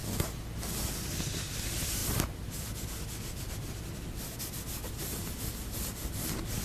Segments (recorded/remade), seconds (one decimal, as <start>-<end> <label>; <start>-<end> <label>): 0.0-6.6 recorded